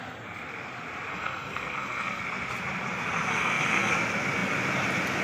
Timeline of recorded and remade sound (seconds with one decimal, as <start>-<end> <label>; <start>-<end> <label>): 0.0-1.1 recorded; 1.1-2.2 remade; 2.2-3.3 recorded; 3.3-3.9 remade; 3.9-5.2 recorded